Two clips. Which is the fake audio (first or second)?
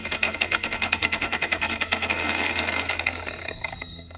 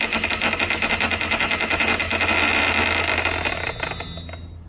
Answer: first